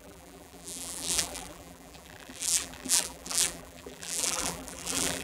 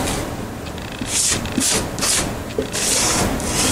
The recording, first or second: second